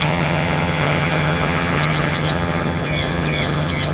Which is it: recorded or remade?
remade